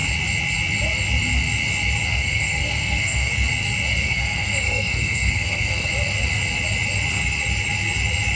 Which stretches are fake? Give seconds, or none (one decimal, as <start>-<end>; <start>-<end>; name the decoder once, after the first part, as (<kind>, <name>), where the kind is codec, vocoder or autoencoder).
2.1-3.3 (codec, SNAC); 3.9-5.9